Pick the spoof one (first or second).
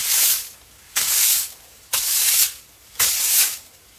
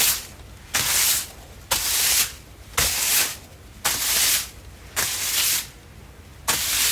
first